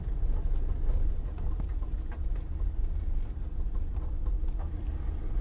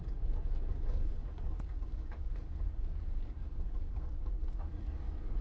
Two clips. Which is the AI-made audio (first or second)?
second